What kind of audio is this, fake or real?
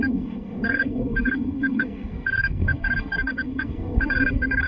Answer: fake